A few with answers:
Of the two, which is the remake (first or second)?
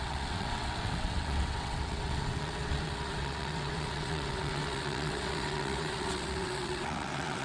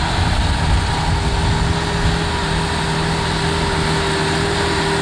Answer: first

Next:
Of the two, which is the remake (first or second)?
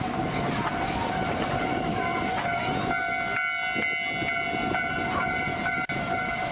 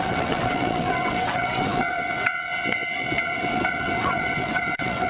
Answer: second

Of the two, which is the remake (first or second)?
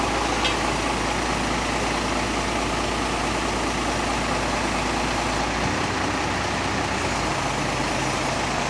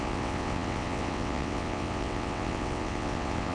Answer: second